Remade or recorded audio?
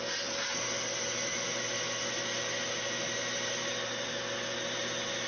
recorded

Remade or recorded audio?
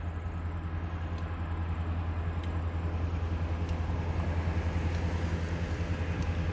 recorded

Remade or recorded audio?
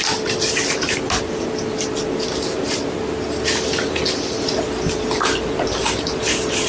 recorded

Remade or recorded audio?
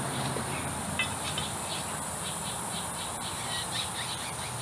remade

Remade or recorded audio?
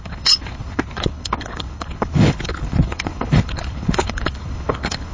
remade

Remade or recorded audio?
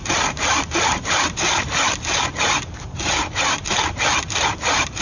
remade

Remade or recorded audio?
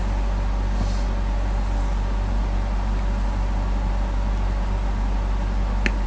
recorded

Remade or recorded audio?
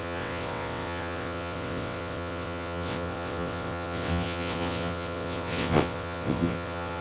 remade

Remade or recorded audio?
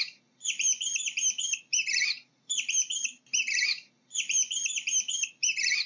recorded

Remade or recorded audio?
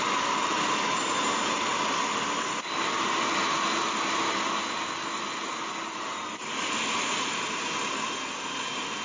recorded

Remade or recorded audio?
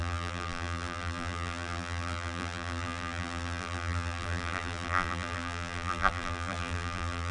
remade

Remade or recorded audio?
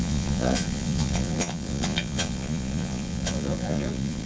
remade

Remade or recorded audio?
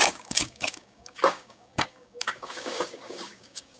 remade